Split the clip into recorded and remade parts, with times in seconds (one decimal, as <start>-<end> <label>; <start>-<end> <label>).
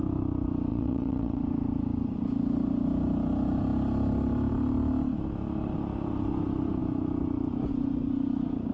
0.0-0.7 recorded; 0.7-1.4 remade; 1.4-8.7 recorded